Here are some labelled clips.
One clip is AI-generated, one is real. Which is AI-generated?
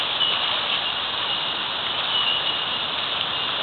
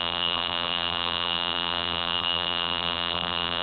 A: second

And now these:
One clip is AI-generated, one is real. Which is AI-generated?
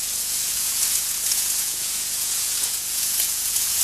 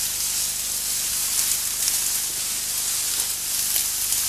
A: first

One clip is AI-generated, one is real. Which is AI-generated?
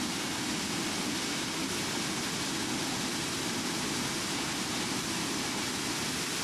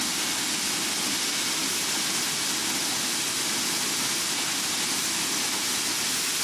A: first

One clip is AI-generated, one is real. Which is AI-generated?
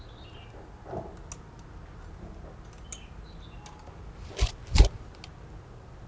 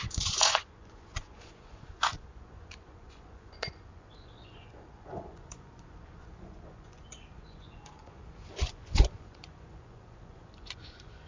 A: second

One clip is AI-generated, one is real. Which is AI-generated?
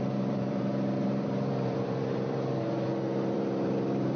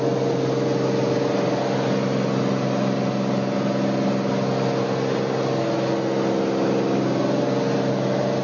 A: first